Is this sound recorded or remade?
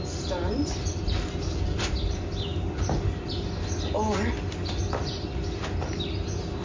recorded